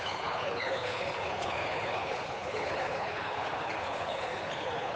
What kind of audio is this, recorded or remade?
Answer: remade